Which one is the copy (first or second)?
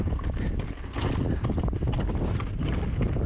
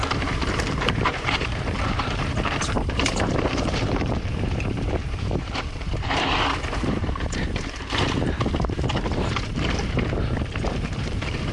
second